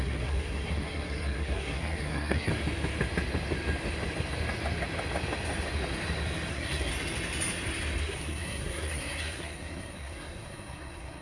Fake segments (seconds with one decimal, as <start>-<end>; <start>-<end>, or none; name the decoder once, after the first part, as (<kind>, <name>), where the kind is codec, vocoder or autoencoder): 0.0-2.5 (codec, SNAC); 6.5-6.9; 8.0-11.2